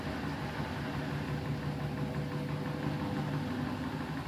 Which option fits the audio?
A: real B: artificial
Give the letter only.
A